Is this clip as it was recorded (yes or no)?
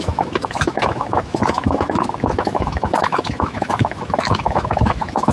no